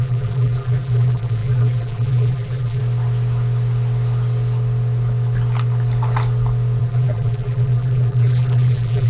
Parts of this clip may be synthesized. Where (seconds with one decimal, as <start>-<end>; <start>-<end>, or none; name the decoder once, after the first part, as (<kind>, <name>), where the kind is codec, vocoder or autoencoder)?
0.0-2.8 (vocoder, BigVGAN v2); 6.8-9.1